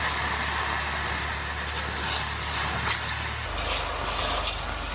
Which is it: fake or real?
real